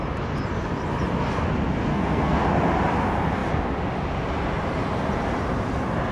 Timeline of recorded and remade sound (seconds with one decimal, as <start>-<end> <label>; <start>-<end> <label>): 0.0-1.9 recorded; 1.9-2.4 remade; 2.4-6.1 recorded